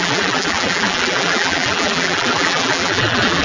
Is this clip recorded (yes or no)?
no